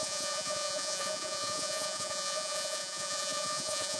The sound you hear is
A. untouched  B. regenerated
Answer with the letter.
B